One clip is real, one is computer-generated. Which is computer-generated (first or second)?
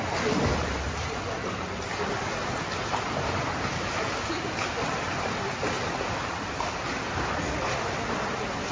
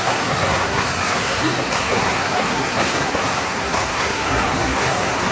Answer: second